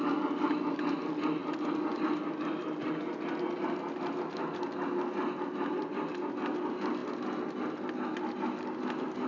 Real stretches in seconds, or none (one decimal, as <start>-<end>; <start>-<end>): 0.0-9.3